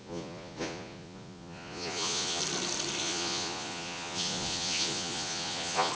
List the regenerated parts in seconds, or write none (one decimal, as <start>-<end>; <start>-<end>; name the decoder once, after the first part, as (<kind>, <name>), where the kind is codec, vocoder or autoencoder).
0.0-2.4 (vocoder, Vocos); 3.0-5.9